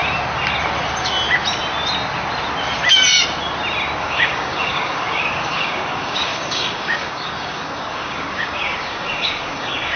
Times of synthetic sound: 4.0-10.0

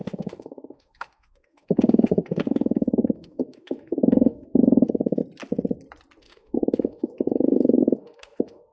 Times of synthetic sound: 0.0-5.2; 6.2-8.7

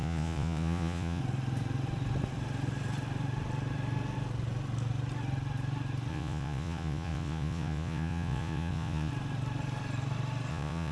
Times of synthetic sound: 0.0-1.2; 6.1-9.1; 10.5-10.9

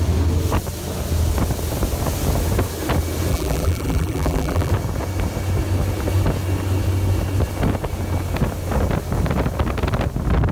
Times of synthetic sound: 3.3-4.7

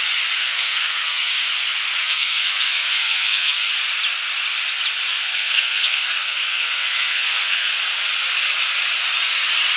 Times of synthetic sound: 0.4-1.3; 2.0-3.7; 5.1-7.7

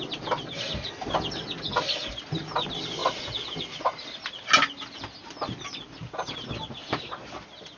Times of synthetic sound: none